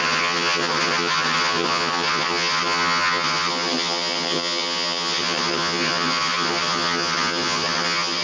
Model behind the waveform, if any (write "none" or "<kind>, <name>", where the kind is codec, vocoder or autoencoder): vocoder, HiFi-GAN